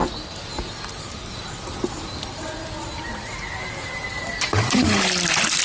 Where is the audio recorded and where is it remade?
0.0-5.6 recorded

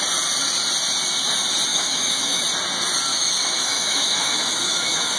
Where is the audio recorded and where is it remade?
0.0-1.7 recorded; 1.7-2.4 remade; 2.4-3.1 recorded; 3.1-5.2 remade

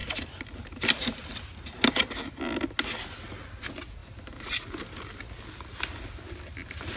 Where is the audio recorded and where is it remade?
0.0-7.0 recorded

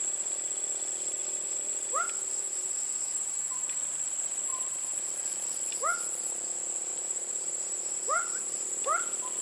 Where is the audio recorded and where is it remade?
0.0-1.2 recorded; 1.2-3.9 remade; 3.9-4.5 recorded; 4.5-5.1 remade; 5.1-6.9 recorded; 6.9-8.8 remade; 8.8-9.4 recorded

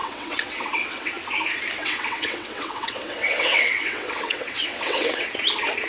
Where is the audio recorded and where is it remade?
0.0-1.1 remade; 1.1-1.8 recorded; 1.8-5.3 remade; 5.3-5.9 recorded

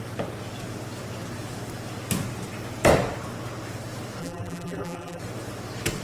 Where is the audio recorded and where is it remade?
0.0-4.2 recorded; 4.2-5.2 remade; 5.2-6.0 recorded

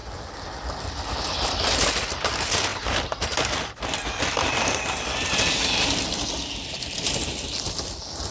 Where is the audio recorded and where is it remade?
0.0-8.3 recorded

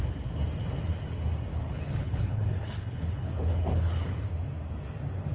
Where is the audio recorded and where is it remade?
0.0-1.5 recorded; 1.5-4.2 remade; 4.2-5.3 recorded